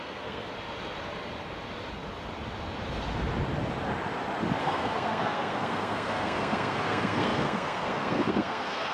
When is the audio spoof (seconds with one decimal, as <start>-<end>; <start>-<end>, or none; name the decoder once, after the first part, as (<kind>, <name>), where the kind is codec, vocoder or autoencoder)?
0.0-0.5 (codec, SNAC); 4.6-8.9